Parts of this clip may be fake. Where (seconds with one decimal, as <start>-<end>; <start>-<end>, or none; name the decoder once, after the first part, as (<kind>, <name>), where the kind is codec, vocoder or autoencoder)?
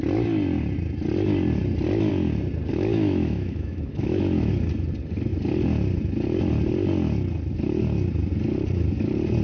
2.7-4.5 (autoencoder, DAC-VAE)